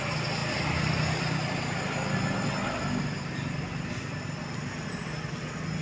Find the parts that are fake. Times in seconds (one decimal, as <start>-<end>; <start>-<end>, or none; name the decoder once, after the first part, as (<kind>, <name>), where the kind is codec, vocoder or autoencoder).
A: none